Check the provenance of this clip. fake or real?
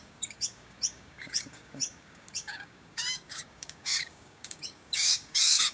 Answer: fake